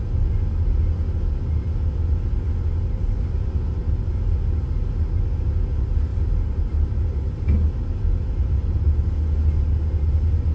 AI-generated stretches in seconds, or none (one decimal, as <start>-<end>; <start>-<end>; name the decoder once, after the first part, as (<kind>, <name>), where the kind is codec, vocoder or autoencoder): none